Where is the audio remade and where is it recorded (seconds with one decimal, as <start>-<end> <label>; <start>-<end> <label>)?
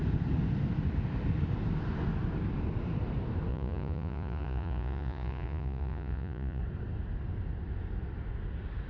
0.0-3.5 recorded; 3.5-6.6 remade; 6.6-8.9 recorded